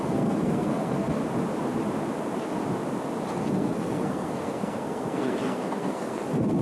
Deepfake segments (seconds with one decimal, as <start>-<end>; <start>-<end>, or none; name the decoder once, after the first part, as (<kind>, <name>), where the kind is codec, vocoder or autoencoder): 0.0-1.2 (codec, SNAC); 3.3-6.6